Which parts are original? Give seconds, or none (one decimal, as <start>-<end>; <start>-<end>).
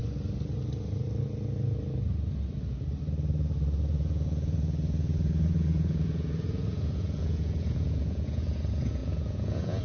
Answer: 0.0-3.9